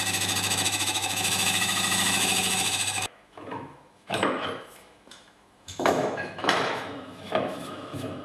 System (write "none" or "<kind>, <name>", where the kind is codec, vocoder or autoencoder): autoencoder, DAC-VAE